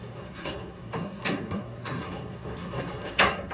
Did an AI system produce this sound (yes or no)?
yes